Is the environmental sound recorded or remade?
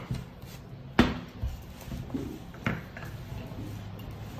recorded